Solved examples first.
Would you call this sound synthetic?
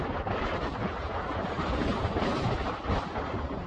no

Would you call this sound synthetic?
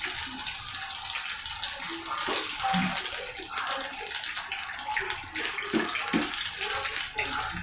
no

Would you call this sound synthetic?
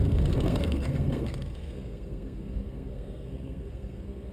yes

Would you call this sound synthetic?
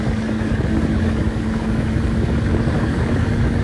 yes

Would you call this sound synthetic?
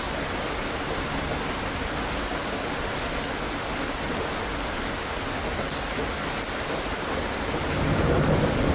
no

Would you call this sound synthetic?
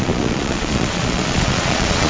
yes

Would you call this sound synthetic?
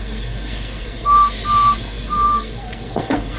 yes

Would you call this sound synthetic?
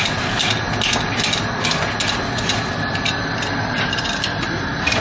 no